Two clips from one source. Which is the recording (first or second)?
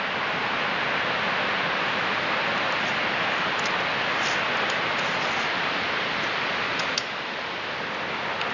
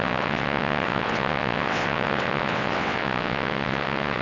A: first